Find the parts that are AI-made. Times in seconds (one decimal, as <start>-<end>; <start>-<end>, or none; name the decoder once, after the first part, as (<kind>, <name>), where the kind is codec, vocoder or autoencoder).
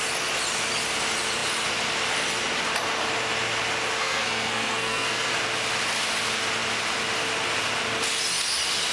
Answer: 4.0-5.4 (codec, SNAC)